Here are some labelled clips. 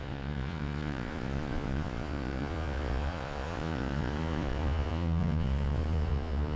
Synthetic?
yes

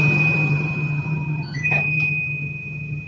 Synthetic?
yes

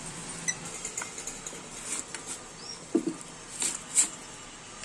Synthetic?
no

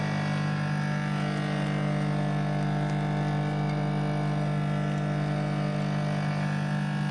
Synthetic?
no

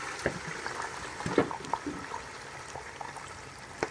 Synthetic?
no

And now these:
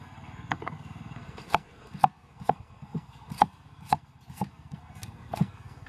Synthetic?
yes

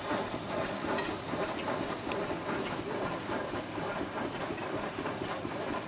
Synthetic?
no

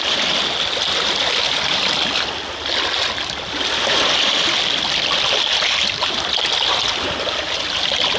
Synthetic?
no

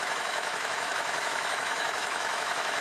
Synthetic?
yes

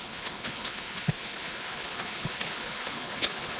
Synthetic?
yes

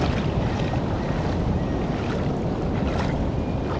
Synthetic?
no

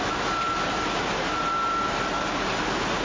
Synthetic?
no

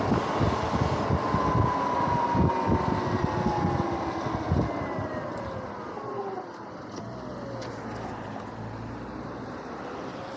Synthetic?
no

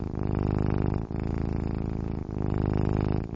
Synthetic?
no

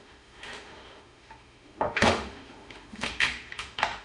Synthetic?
yes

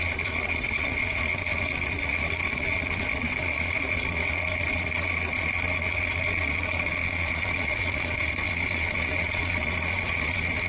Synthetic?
yes